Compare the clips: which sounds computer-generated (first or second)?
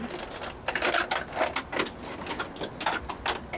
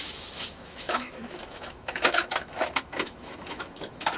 second